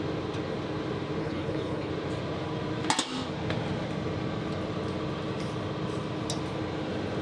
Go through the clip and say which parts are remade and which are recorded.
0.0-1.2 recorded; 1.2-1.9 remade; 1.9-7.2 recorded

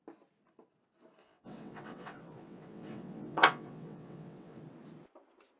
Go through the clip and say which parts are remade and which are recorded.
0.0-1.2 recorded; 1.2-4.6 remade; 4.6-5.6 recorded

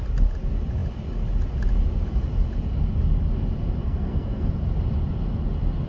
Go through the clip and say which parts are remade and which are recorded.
0.0-3.8 recorded; 3.8-4.5 remade; 4.5-5.9 recorded

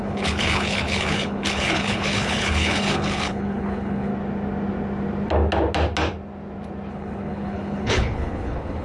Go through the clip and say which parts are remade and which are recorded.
0.0-4.1 remade; 4.1-6.9 recorded; 6.9-8.8 remade

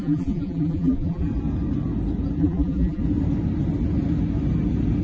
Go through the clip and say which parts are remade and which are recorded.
0.0-1.3 remade; 1.3-2.4 recorded; 2.4-3.0 remade; 3.0-5.0 recorded